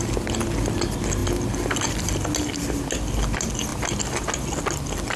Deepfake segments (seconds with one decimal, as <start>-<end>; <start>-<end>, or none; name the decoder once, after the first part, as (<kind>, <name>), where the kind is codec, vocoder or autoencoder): none